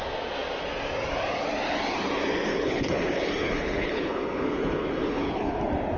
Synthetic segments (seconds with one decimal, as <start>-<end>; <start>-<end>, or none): 2.5-5.6